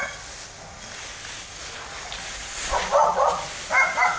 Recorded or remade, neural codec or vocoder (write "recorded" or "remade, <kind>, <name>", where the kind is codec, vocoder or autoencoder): recorded